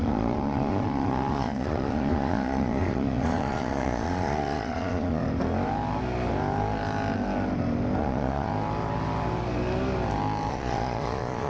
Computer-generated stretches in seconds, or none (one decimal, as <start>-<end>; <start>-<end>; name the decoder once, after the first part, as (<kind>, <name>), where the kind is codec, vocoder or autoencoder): 0.0-5.2 (vocoder, Vocos); 8.0-8.5; 10.5-11.5